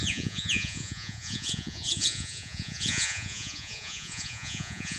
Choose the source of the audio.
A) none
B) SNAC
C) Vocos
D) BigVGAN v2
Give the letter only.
C